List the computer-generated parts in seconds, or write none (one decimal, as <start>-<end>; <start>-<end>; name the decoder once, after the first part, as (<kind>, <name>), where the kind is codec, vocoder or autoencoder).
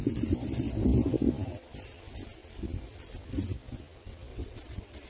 4.3-5.1 (vocoder, WaveNeXt)